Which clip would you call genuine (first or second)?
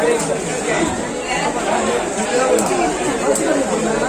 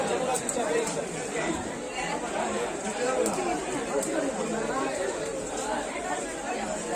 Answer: first